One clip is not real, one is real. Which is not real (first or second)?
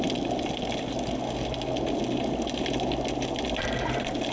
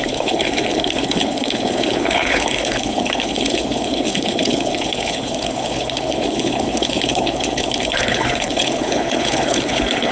second